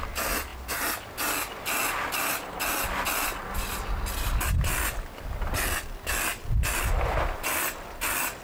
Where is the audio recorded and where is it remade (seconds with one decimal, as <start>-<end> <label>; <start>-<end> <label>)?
0.0-6.3 recorded; 6.3-7.1 remade; 7.1-8.4 recorded